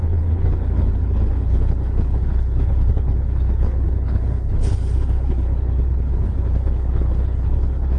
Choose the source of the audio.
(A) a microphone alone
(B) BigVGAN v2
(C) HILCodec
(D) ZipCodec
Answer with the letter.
C